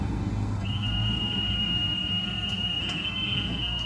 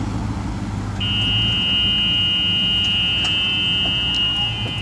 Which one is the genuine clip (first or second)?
second